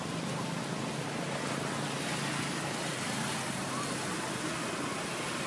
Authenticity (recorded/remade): recorded